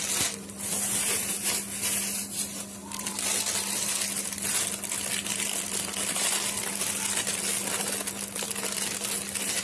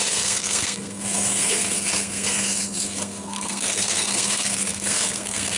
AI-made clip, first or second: second